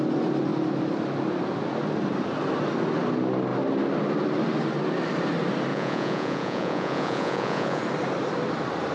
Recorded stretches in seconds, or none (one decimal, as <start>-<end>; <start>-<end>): 0.0-5.7; 7.8-8.9